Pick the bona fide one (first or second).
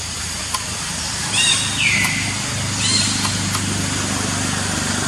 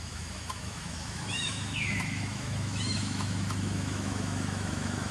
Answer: first